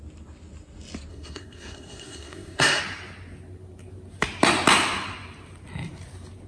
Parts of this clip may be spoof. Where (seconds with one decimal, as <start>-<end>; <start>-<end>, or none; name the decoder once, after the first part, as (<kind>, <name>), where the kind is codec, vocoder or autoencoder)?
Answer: 1.1-2.8 (codec, SNAC)

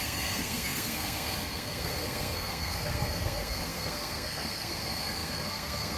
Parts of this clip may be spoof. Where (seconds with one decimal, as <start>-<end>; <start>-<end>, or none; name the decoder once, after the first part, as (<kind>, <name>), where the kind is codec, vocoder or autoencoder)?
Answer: 0.0-6.0 (codec, SNAC)

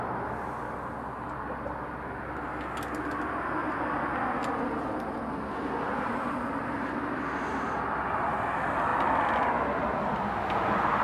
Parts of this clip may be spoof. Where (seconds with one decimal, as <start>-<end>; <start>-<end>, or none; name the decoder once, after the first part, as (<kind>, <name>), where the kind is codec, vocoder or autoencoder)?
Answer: none